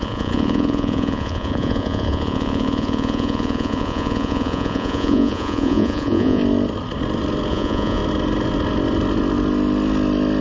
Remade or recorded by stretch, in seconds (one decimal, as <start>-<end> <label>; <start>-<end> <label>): 0.0-6.4 remade; 6.4-7.5 recorded; 7.5-8.0 remade; 8.0-10.4 recorded